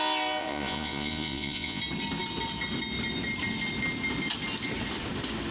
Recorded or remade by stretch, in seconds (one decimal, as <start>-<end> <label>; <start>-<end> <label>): 0.0-0.4 recorded; 0.4-1.8 remade; 1.8-5.5 recorded